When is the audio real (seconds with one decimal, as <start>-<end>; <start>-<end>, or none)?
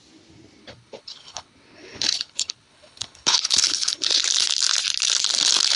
0.0-0.6; 4.1-5.8